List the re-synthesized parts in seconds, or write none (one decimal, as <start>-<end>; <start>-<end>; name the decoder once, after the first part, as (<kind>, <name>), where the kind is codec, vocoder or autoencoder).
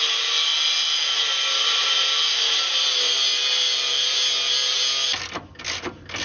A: none